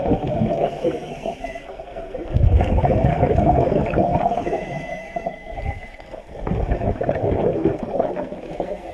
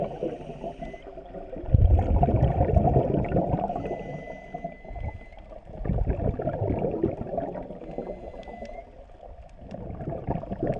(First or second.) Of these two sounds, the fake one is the first